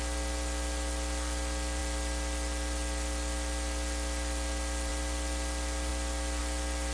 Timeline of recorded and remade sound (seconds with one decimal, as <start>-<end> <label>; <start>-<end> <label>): 0.0-6.9 recorded